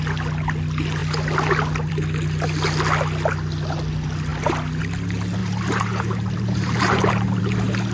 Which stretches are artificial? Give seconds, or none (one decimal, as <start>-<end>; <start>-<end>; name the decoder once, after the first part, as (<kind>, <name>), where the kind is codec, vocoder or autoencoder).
5.4-7.4 (vocoder, BigVGAN v2)